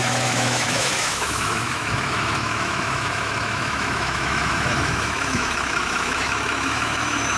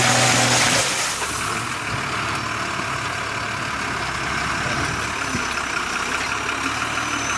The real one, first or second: second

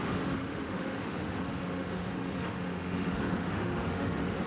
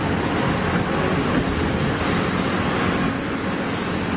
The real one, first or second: second